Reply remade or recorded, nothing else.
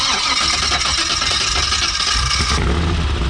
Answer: recorded